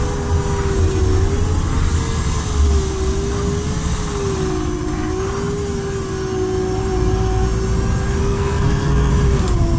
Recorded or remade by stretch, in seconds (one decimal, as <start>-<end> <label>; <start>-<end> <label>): 0.0-8.2 recorded; 8.2-9.1 remade; 9.1-9.8 recorded